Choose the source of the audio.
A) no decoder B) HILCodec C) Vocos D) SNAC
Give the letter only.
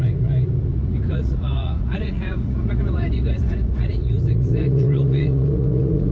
C